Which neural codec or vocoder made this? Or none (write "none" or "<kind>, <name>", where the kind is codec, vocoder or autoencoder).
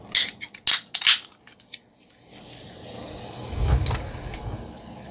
none